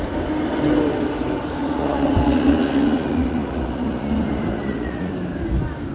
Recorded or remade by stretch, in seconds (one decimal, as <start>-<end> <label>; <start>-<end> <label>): 0.0-1.6 recorded; 1.6-5.1 remade; 5.1-5.9 recorded